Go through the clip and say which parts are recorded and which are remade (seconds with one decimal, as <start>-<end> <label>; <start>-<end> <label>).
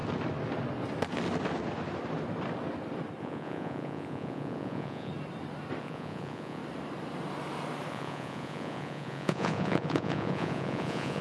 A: 0.0-3.2 recorded; 3.2-5.1 remade; 5.1-5.8 recorded; 5.8-6.6 remade; 6.6-7.9 recorded; 7.9-11.2 remade